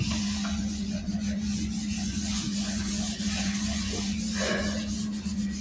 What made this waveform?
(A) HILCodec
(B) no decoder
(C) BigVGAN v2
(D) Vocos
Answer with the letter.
D